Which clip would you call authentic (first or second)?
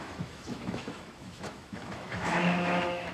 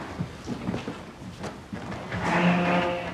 second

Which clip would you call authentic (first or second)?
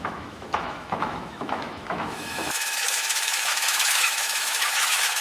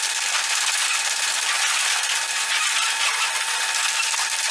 second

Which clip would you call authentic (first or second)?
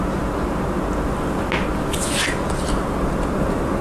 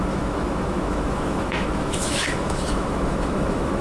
first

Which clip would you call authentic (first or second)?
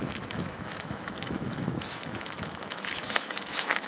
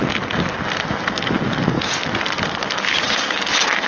second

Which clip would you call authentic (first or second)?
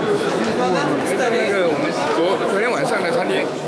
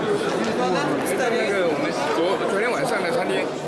second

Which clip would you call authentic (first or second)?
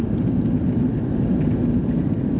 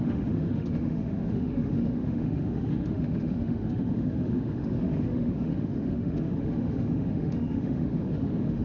first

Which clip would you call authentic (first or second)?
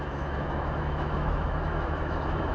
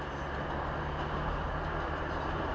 second